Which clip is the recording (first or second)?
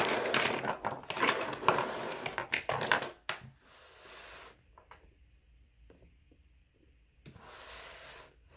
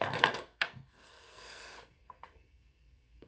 first